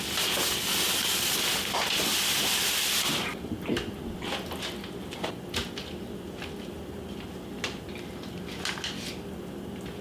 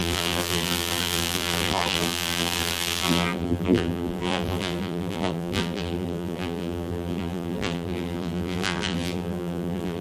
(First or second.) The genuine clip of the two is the first